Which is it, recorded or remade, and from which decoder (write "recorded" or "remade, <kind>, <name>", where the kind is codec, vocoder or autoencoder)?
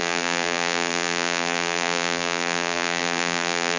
remade, vocoder, BigVGAN v2